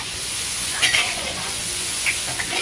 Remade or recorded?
remade